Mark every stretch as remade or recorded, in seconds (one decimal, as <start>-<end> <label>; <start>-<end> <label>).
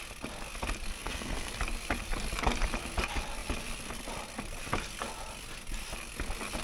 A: 0.0-1.0 recorded; 1.0-1.5 remade; 1.5-6.6 recorded